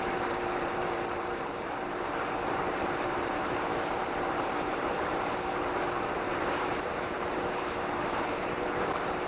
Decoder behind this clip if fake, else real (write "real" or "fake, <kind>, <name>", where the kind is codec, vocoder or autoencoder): fake, vocoder, BigVGAN v2